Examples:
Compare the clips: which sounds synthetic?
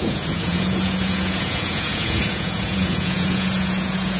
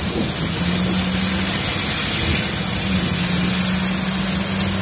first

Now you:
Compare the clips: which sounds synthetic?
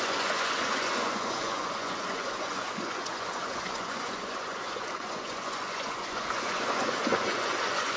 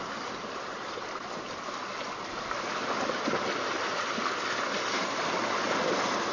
first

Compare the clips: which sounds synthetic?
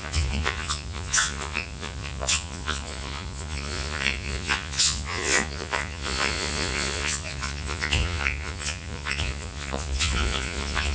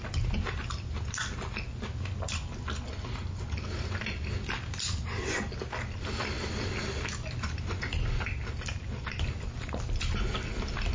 first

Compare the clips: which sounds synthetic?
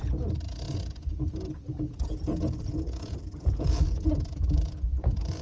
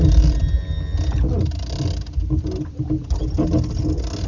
first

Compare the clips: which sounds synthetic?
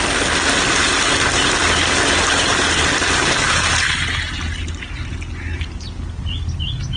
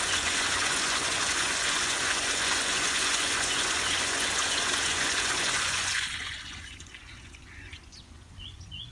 second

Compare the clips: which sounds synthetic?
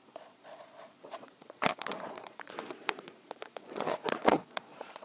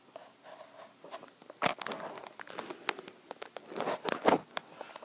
first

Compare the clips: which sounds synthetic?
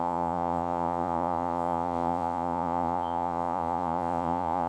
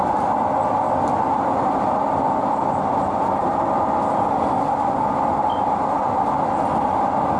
first